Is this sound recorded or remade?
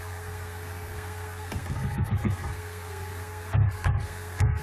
remade